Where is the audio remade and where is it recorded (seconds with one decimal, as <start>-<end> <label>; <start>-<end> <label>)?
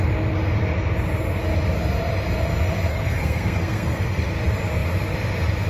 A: 0.0-2.9 recorded; 2.9-4.2 remade; 4.2-5.7 recorded